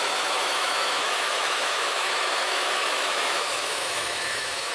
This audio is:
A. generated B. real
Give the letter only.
A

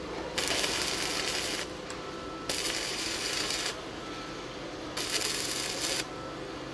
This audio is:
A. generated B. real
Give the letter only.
B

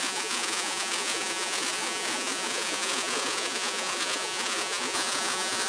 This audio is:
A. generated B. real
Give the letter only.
A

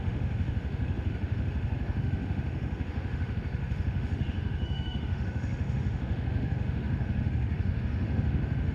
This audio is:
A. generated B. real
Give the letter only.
A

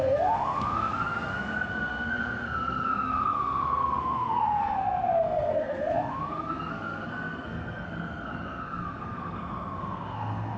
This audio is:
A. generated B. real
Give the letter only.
A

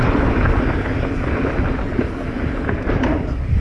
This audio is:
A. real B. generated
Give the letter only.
A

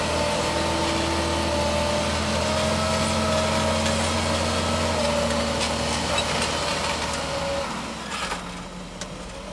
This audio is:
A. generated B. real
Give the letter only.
B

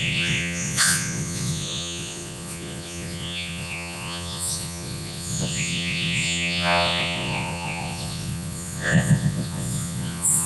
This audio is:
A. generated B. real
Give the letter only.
A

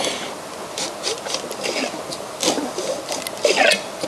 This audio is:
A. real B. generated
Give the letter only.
A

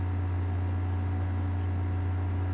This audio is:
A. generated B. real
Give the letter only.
B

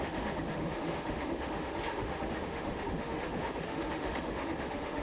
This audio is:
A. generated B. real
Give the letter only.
A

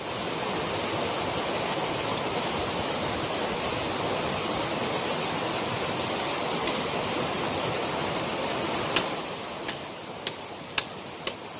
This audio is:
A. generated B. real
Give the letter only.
B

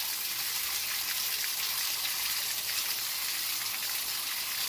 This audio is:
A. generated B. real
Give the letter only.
B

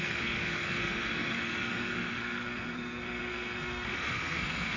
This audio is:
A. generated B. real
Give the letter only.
A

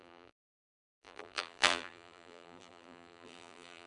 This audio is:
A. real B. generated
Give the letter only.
B